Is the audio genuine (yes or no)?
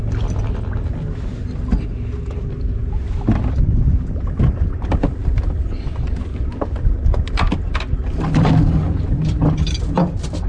yes